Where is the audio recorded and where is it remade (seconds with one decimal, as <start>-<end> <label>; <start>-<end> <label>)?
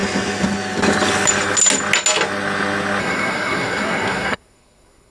0.0-3.0 recorded; 3.0-5.1 remade